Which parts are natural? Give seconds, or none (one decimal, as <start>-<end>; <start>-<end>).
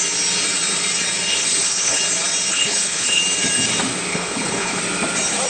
0.0-1.3; 2.0-2.5; 3.2-4.1; 4.8-5.5